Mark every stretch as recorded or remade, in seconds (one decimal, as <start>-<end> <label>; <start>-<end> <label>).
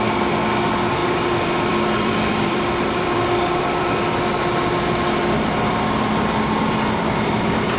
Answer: 0.0-1.0 recorded; 1.0-4.0 remade; 4.0-7.8 recorded